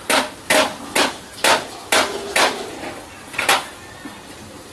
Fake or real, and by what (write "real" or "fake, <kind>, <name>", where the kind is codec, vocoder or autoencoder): real